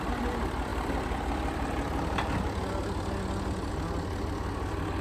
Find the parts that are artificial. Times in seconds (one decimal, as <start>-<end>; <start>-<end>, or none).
none